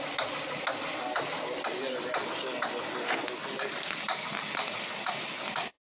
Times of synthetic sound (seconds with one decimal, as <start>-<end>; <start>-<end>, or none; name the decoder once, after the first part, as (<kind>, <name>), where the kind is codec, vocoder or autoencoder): none